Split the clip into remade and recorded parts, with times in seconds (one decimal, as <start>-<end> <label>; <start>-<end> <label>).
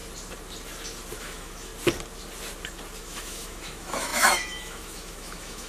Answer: 0.0-1.2 recorded; 1.2-1.7 remade; 1.7-3.0 recorded; 3.0-5.7 remade